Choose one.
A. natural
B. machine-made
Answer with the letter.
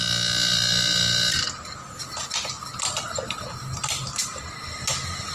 A